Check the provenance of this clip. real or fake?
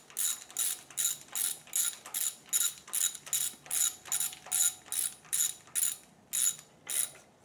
real